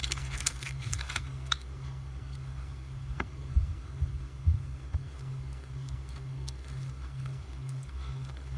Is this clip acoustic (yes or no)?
no